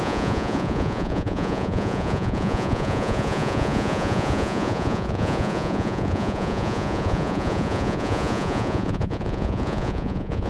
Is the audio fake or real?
fake